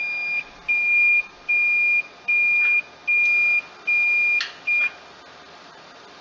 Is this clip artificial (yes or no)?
no